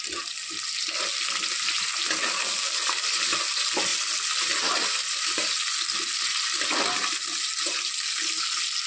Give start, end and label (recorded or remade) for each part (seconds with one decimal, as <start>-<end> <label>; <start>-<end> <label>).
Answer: 0.0-8.9 recorded